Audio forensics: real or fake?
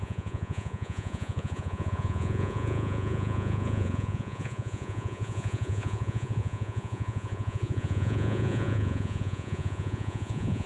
fake